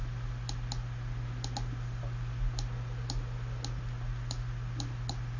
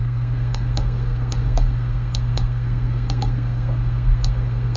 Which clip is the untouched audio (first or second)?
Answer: first